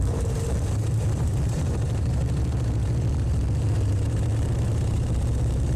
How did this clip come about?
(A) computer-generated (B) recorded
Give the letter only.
A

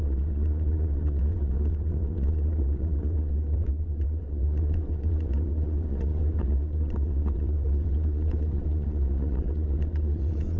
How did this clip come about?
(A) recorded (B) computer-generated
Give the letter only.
B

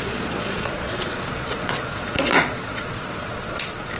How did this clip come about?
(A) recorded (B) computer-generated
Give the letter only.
B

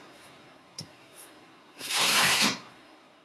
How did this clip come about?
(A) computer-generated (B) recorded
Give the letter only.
A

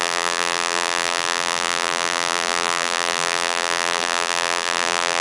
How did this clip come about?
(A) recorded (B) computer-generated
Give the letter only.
B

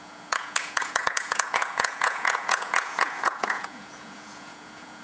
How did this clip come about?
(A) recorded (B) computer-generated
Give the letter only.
B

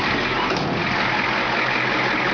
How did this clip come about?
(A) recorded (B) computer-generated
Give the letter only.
A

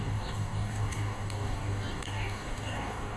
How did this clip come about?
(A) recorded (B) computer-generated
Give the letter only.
B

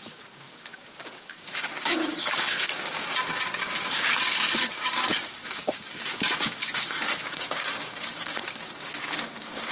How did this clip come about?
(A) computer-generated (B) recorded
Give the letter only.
A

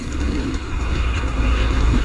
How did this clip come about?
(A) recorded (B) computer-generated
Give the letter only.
B